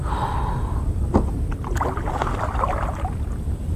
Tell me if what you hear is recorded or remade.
recorded